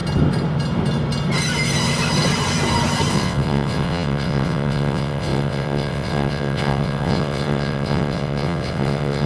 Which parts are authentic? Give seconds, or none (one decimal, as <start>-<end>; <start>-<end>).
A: 0.0-3.1